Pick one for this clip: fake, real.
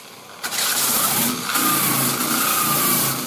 real